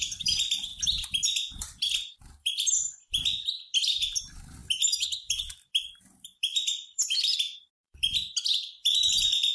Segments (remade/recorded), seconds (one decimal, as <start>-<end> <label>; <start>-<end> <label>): 0.0-0.7 remade; 0.7-1.6 recorded; 1.6-9.5 remade